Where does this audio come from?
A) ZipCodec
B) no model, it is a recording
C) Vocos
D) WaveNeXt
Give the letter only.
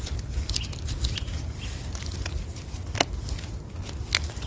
B